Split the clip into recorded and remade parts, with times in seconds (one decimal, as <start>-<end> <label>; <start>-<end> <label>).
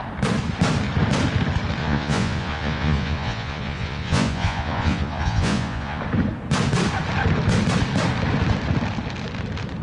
0.0-1.8 recorded; 1.8-6.0 remade; 6.0-9.8 recorded